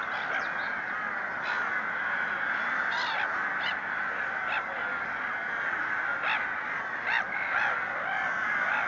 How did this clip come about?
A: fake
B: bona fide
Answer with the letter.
B